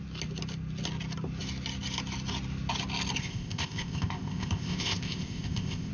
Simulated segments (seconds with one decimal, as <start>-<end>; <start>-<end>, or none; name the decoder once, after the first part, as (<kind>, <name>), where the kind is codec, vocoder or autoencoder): 3.2-5.9 (codec, ZipCodec)